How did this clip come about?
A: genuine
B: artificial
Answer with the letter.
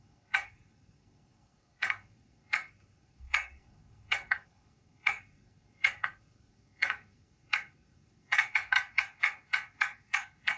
B